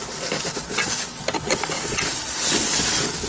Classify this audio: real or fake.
real